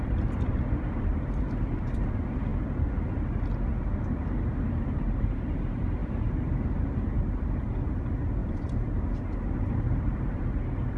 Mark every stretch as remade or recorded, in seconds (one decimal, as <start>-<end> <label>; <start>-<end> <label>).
0.0-2.5 remade; 2.5-4.0 recorded; 4.0-11.0 remade